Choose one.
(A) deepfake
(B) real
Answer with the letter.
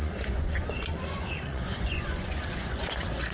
A